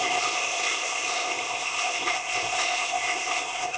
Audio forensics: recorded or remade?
remade